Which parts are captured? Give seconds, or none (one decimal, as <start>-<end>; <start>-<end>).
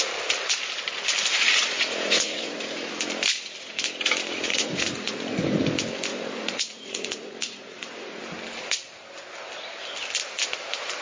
0.0-1.3; 2.9-4.4; 5.6-6.1; 8.2-11.0